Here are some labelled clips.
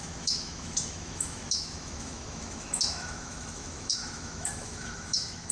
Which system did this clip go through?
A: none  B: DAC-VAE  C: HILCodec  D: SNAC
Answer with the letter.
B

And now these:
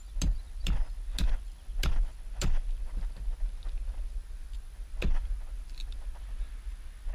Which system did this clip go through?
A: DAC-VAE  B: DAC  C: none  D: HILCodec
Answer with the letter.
C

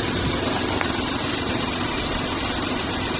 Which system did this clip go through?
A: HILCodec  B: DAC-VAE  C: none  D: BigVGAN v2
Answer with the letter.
C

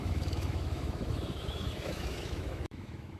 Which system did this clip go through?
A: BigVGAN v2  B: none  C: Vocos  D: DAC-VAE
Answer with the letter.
D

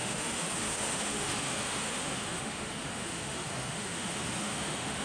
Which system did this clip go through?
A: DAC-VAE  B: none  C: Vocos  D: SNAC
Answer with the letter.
A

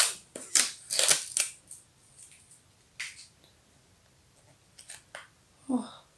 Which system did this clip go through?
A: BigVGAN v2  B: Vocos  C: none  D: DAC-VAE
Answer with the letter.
C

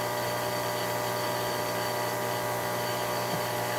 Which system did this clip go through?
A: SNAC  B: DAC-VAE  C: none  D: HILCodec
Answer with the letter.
C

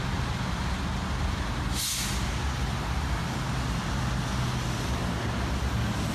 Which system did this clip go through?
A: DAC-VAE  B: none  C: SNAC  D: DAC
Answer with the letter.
B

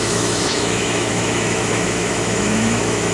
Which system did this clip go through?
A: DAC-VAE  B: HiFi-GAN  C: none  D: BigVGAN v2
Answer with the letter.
A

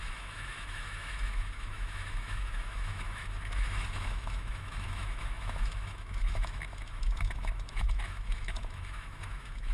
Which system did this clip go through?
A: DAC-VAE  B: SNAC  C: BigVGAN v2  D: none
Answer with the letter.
A